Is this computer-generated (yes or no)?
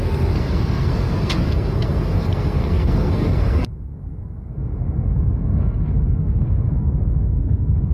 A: yes